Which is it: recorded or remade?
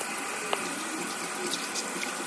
recorded